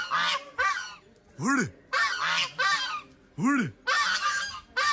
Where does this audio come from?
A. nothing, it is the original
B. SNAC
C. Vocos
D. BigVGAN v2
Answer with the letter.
A